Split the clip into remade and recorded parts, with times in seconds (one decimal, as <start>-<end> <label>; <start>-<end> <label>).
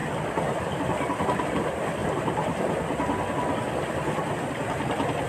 0.0-5.3 recorded